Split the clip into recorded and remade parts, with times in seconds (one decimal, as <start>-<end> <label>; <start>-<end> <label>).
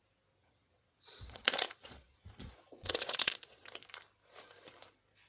0.0-0.4 recorded; 0.4-3.6 remade; 3.6-5.3 recorded